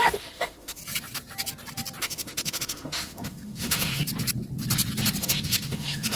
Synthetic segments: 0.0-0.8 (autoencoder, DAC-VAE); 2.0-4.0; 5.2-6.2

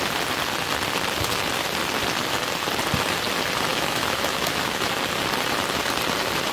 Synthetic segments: 3.7-4.9 (autoencoder, DAC-VAE)

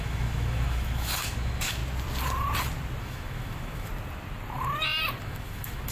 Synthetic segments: 0.0-1.8 (autoencoder, DAC-VAE); 3.0-3.9; 5.2-5.9

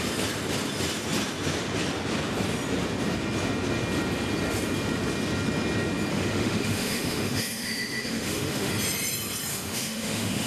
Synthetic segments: 6.1-8.7 (autoencoder, DAC-VAE); 9.5-10.5

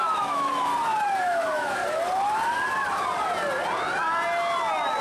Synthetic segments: 0.0-0.7 (autoencoder, DAC-VAE); 1.2-1.8

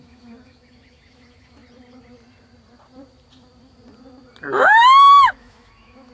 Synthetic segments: 0.0-1.6 (autoencoder, DAC-VAE); 5.3-6.1

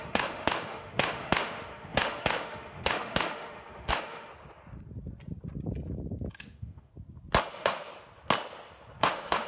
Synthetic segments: 0.0-4.3 (autoencoder, DAC-VAE); 6.4-6.9; 7.4-7.9; 9.0-9.5

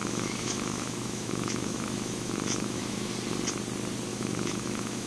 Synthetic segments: 0.0-3.1 (autoencoder, DAC-VAE); 4.1-5.1